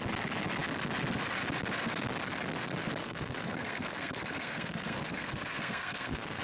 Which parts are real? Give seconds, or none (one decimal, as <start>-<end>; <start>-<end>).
0.0-3.0